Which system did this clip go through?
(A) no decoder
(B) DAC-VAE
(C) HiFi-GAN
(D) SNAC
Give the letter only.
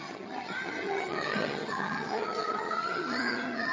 C